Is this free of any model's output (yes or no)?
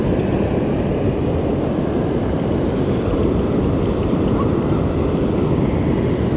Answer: yes